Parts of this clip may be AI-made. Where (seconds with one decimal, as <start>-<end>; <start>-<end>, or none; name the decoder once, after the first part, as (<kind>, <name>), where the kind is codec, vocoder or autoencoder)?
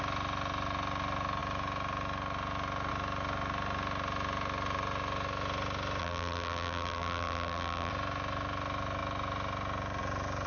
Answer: 6.0-7.9 (vocoder, BigVGAN v2)